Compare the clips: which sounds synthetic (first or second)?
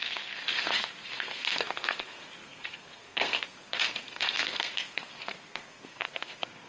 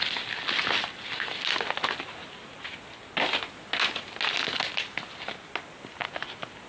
first